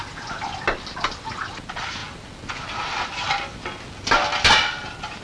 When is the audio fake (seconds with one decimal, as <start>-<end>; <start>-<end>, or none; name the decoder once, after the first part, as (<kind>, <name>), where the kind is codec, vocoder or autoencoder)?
none